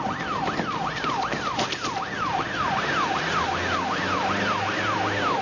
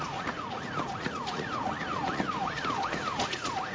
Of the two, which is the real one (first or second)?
first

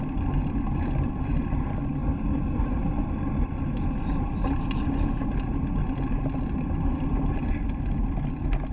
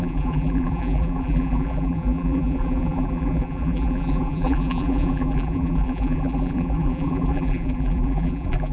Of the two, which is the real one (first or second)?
first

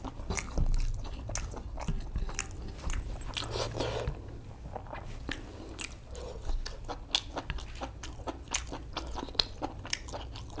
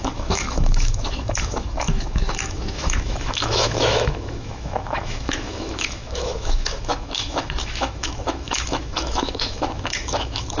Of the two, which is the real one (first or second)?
first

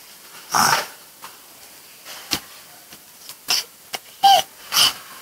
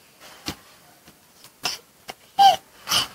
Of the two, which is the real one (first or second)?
second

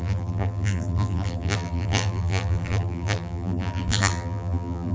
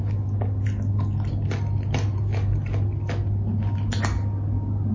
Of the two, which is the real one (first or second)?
second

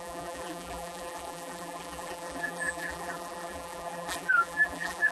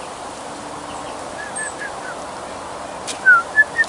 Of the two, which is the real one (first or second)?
second